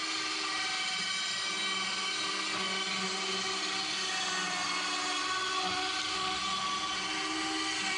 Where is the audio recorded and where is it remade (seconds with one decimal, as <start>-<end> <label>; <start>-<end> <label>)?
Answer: 0.0-8.0 recorded